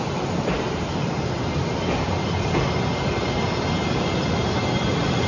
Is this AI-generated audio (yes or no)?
no